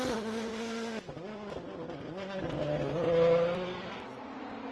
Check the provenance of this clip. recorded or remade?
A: recorded